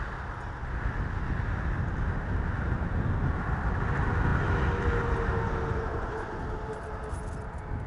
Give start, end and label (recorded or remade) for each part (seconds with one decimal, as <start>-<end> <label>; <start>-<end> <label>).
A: 0.0-5.7 recorded; 5.7-6.4 remade; 6.4-7.9 recorded